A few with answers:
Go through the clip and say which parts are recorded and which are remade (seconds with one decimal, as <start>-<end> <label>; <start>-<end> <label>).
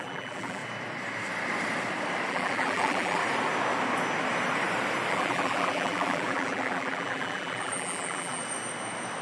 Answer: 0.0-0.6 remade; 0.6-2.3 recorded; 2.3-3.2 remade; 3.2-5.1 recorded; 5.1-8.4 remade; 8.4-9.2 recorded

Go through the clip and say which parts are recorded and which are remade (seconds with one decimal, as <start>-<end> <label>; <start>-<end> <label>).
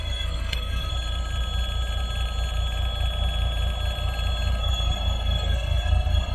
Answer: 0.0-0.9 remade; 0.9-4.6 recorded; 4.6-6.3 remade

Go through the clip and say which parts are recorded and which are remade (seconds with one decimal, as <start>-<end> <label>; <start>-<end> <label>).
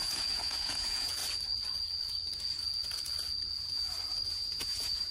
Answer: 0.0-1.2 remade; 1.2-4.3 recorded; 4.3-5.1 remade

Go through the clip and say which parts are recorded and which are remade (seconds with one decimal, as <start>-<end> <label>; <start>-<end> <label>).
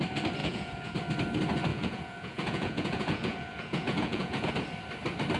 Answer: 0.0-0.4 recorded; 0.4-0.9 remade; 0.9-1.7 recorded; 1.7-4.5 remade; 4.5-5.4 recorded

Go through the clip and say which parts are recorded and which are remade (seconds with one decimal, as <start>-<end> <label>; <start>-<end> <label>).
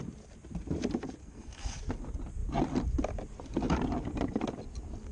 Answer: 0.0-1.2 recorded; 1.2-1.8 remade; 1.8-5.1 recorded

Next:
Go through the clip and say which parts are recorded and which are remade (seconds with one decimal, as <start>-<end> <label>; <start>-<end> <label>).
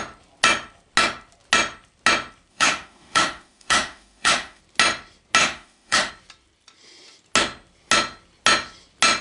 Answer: 0.0-2.5 recorded; 2.5-4.6 remade; 4.6-5.4 recorded; 5.4-6.1 remade; 6.1-9.2 recorded